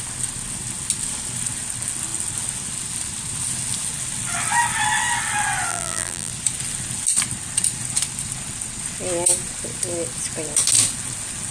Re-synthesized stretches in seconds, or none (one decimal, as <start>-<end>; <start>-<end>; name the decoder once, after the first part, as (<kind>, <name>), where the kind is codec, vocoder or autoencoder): 5.7-6.3 (vocoder, BigVGAN v2)